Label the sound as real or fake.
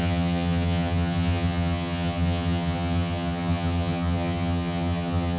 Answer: fake